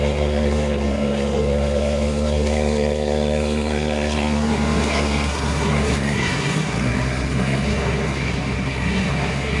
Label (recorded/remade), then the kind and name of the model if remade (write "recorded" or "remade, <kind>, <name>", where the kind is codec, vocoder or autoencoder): remade, codec, SNAC